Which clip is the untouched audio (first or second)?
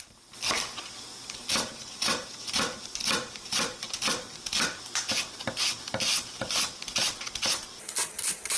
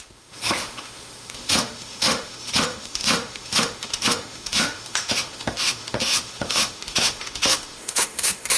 first